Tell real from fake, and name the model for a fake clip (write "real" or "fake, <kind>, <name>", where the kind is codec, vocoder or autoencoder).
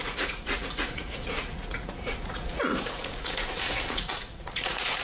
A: fake, vocoder, Vocos